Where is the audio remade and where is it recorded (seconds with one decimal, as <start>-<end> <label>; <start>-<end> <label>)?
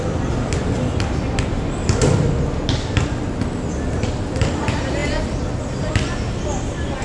0.0-7.0 recorded